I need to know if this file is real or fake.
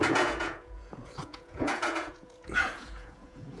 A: fake